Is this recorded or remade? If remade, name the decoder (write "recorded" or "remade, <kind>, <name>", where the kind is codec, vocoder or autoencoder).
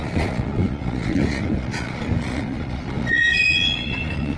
remade, vocoder, Vocos